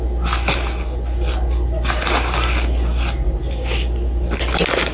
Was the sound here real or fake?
real